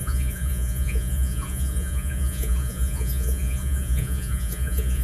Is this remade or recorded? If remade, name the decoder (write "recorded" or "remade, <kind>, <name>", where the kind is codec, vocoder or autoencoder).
remade, vocoder, Vocos